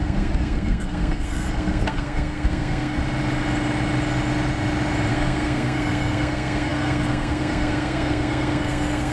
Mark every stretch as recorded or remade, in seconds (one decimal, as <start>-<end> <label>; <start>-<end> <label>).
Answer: 0.0-3.0 remade; 3.0-5.1 recorded; 5.1-9.1 remade